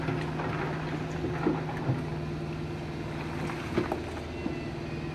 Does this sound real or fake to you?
real